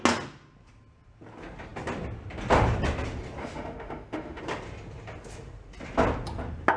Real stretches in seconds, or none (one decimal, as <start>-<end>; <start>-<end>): 0.0-3.4; 4.4-6.8